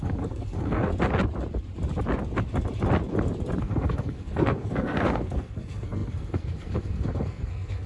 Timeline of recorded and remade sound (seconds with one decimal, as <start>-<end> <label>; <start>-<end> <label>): 0.0-0.9 remade; 0.9-3.6 recorded; 3.6-7.9 remade